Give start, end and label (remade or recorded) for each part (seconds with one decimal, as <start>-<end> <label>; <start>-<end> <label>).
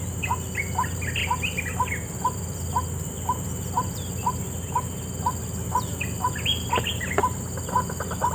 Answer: 0.0-8.3 recorded